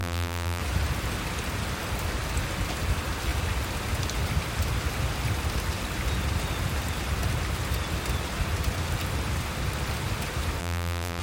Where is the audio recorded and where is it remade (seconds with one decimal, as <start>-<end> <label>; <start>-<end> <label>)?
0.0-0.6 remade; 0.6-10.6 recorded; 10.6-11.2 remade